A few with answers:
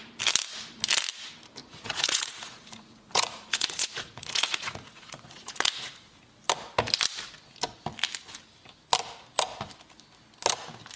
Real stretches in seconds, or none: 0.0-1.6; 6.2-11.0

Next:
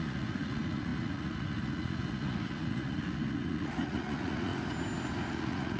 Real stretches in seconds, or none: 4.5-5.3

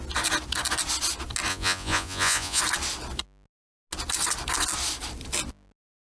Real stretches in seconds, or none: 0.0-1.5; 2.6-6.1

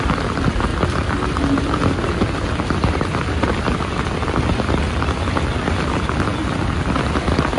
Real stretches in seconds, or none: 0.0-7.6

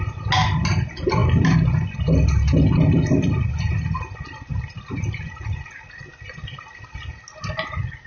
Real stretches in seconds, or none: 0.0-8.1

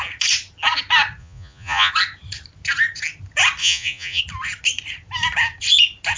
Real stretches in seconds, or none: 0.0-1.2; 1.9-3.6; 4.2-6.2

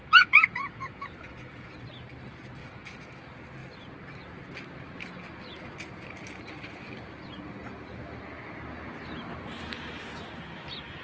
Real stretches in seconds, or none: 1.8-2.6; 3.2-11.0

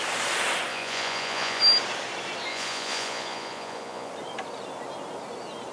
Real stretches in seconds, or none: 0.0-0.7; 1.6-2.5; 4.1-5.7